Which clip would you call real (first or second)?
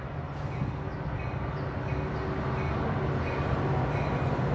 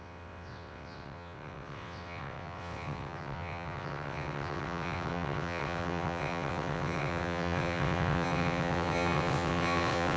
first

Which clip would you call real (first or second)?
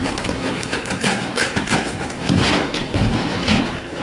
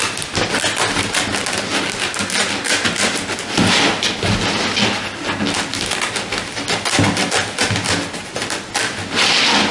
second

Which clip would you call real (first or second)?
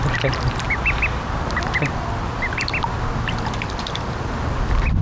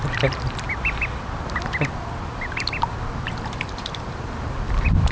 first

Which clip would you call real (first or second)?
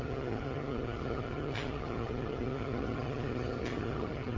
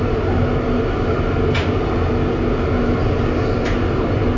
second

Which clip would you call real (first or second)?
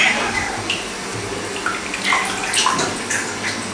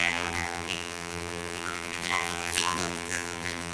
first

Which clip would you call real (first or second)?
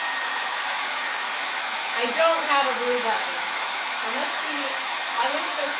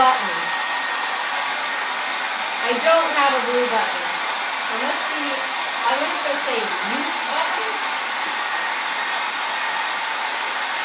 second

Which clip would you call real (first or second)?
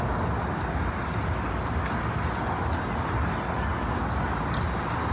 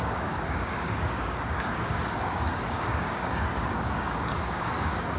first